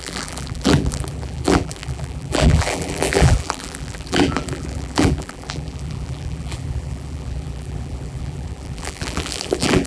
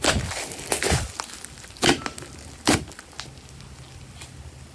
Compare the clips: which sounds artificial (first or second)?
first